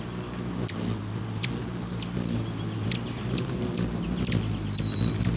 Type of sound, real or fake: real